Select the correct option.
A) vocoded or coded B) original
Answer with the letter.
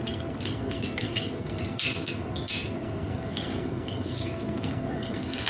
A